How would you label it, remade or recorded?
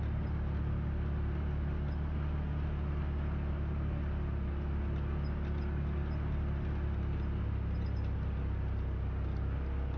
recorded